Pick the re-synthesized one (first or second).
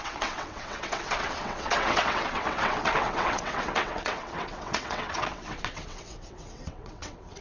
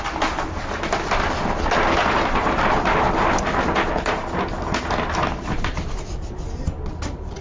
first